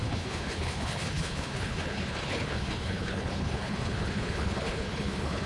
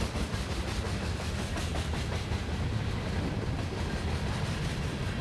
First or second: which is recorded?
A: second